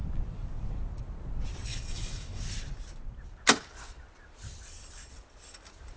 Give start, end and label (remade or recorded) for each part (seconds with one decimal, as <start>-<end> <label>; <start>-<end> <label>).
0.0-1.7 recorded; 1.7-2.4 remade; 2.4-6.0 recorded